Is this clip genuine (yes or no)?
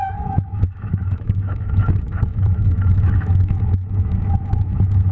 no